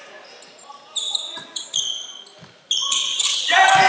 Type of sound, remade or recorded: recorded